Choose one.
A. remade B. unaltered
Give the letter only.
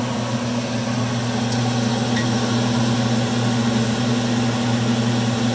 B